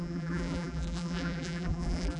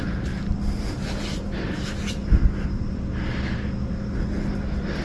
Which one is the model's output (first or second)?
first